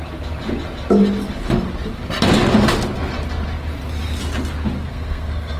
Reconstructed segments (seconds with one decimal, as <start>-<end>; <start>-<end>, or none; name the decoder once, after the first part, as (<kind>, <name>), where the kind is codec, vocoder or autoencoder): 4.8-5.6 (codec, SNAC)

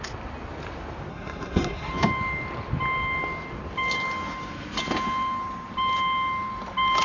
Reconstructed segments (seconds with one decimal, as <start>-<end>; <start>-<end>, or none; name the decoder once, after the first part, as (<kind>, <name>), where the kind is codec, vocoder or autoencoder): 1.1-1.9 (codec, SNAC)

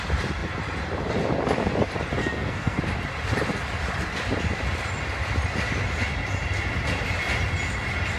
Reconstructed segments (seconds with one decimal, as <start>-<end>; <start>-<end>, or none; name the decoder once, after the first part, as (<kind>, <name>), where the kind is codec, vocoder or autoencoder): 2.2-2.8 (codec, SNAC)

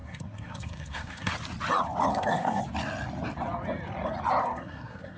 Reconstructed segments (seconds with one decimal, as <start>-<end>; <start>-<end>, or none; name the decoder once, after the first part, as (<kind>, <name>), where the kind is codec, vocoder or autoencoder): 0.0-1.3 (codec, SNAC); 2.1-2.6; 4.4-5.2

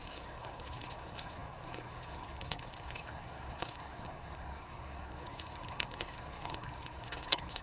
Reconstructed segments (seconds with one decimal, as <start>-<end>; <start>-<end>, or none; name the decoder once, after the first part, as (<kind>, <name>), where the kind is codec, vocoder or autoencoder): 0.0-7.6 (codec, SNAC)